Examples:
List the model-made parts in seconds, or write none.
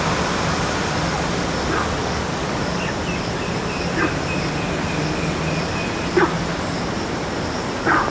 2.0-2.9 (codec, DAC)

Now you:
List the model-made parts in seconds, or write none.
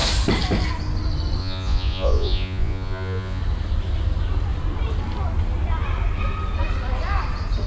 1.4-3.4 (vocoder, Vocos)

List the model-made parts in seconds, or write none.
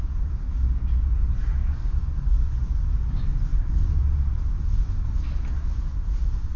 1.6-2.6 (codec, DAC)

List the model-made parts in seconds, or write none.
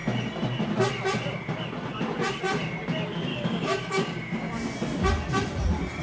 3.3-4.5 (codec, DAC)